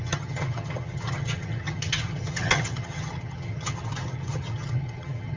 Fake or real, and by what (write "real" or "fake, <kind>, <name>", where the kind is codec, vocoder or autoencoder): fake, vocoder, HiFi-GAN